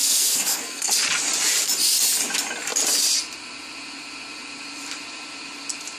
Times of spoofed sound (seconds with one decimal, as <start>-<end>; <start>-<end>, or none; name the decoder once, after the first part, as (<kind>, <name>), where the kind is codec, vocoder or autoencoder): 0.0-0.9 (codec, SNAC)